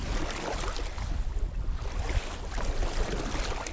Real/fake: real